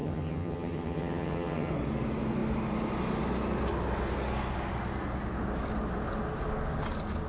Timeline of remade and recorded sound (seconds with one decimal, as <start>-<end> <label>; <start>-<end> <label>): 0.0-1.7 remade; 1.7-7.3 recorded